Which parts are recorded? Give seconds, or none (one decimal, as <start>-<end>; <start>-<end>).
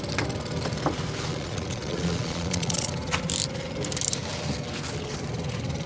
0.0-1.3; 2.9-5.9